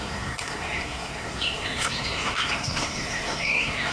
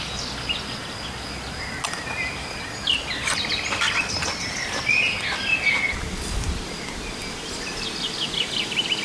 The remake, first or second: first